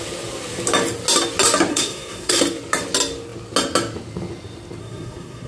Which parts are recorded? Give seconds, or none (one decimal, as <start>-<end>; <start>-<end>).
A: 0.0-1.7; 2.4-4.8

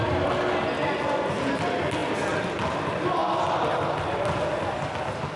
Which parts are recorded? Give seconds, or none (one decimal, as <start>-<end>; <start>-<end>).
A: 0.0-5.4